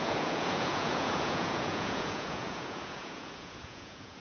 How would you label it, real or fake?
fake